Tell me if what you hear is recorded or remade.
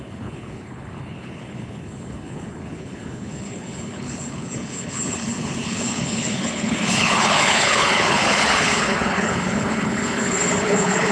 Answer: remade